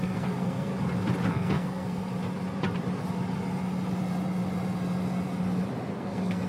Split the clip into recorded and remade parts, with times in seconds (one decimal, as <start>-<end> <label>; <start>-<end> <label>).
0.0-0.7 remade; 0.7-1.3 recorded; 1.3-2.0 remade; 2.0-5.9 recorded; 5.9-6.5 remade